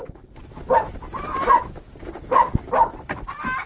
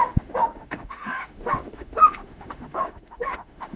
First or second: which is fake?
second